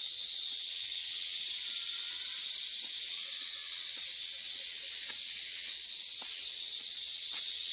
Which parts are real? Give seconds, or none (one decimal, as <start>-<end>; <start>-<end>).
2.3-3.1